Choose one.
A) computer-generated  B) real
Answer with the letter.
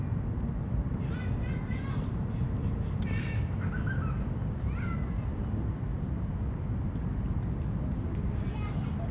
B